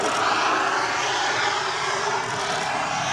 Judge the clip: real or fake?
real